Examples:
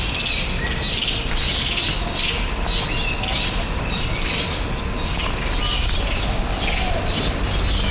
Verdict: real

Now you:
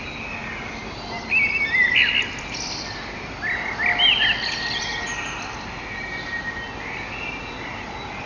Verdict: real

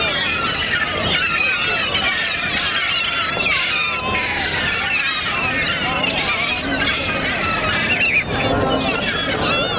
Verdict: real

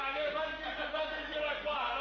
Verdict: fake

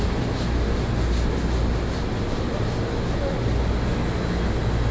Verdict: real